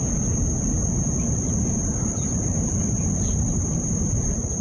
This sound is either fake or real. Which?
fake